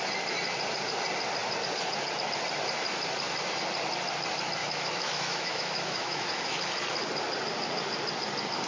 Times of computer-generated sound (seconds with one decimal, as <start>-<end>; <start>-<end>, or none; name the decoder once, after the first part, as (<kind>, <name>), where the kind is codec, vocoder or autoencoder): 4.6-6.7 (autoencoder, DAC-VAE)